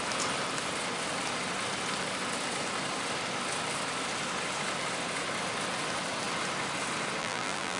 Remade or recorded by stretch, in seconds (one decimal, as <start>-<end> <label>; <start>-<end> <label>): 0.0-7.2 recorded; 7.2-7.8 remade